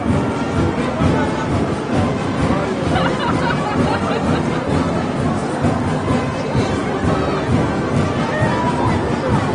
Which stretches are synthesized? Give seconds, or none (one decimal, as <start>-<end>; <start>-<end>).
none